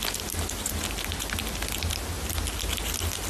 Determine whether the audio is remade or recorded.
recorded